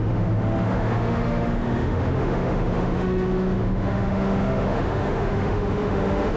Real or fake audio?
fake